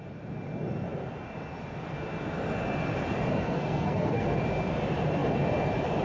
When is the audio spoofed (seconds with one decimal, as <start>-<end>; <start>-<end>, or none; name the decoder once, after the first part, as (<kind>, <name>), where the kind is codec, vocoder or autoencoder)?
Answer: 3.3-4.4 (codec, SNAC)